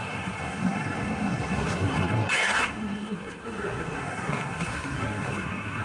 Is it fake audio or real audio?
fake